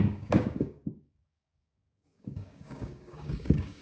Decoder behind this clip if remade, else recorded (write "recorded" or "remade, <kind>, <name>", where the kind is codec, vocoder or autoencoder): remade, codec, DAC